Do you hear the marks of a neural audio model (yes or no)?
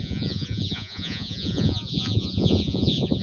yes